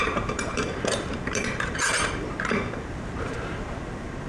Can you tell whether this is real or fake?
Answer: fake